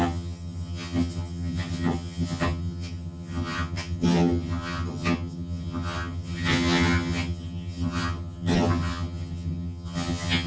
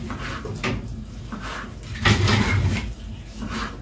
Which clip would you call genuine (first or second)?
second